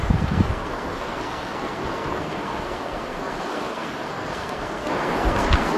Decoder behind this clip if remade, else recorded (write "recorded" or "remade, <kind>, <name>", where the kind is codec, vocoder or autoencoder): remade, codec, SNAC